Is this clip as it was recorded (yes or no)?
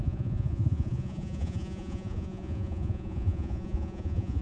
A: no